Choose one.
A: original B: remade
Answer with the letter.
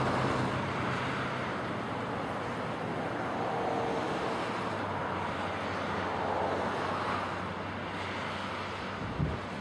A